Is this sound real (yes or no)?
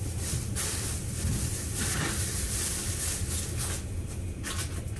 yes